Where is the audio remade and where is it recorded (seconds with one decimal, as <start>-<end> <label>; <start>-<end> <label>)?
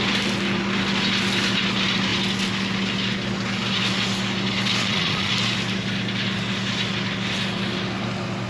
0.0-4.8 recorded; 4.8-5.3 remade; 5.3-8.5 recorded